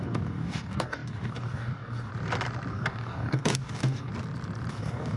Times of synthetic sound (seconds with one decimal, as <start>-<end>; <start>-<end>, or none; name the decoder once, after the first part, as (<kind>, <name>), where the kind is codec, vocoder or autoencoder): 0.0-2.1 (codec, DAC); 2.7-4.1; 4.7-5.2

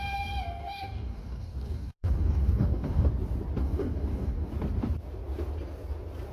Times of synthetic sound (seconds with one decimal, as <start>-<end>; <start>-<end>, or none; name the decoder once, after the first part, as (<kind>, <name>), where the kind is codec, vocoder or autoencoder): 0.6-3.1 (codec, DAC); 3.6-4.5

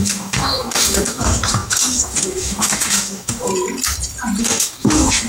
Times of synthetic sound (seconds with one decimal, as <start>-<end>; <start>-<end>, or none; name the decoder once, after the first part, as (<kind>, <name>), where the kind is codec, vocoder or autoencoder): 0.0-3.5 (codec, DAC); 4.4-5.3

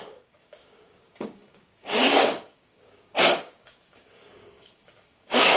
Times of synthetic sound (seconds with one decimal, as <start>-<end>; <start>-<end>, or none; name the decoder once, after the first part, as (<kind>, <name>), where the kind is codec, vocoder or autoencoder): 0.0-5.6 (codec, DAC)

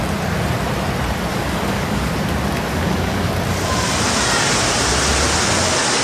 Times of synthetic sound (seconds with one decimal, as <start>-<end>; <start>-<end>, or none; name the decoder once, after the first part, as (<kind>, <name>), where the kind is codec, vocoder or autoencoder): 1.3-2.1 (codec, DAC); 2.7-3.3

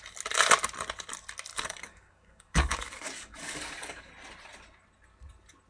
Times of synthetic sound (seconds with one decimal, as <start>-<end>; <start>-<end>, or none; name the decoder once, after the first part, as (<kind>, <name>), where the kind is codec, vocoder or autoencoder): 1.5-4.1 (codec, DAC)

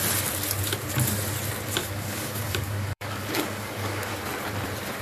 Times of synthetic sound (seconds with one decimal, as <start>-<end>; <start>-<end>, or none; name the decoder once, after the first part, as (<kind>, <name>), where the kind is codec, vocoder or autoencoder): 1.8-4.1 (codec, DAC)

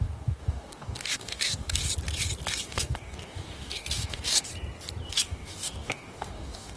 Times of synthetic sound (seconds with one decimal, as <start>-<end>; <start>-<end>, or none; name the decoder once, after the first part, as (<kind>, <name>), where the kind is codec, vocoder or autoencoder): 0.0-1.8 (codec, DAC); 2.6-4.5; 5.1-6.8